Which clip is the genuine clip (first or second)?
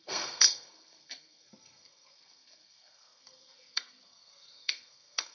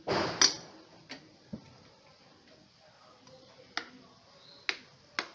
second